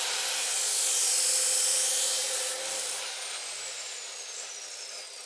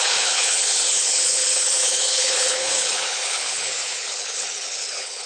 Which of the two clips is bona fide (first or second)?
first